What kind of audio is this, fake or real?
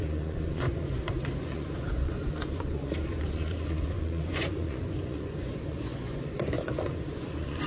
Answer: fake